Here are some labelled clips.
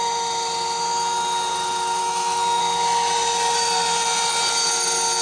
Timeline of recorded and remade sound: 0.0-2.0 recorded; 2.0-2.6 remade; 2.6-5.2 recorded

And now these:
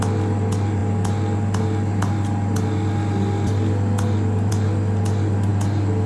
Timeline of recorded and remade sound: 0.0-6.1 recorded

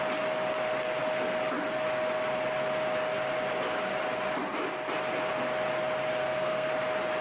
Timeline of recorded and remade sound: 0.0-6.2 recorded; 6.2-6.7 remade; 6.7-7.2 recorded

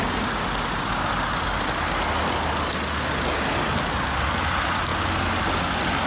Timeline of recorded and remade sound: 0.0-6.1 recorded